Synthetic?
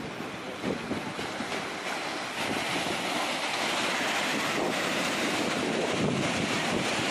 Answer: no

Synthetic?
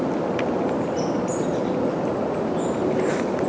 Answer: no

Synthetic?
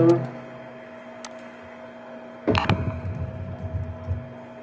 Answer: no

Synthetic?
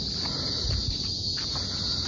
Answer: no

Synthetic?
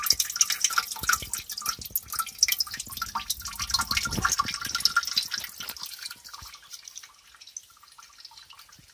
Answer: no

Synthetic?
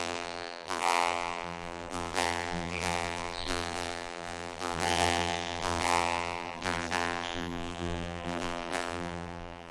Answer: yes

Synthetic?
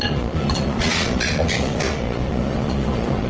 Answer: yes